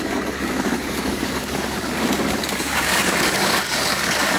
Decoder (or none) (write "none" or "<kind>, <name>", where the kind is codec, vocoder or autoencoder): codec, DAC